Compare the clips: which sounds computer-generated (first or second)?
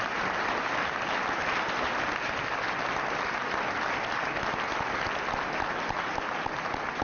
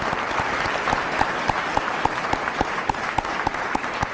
second